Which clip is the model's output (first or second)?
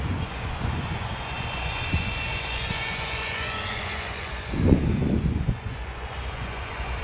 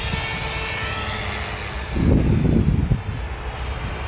first